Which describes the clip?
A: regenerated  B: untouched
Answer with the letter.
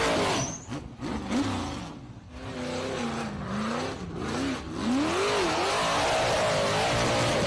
B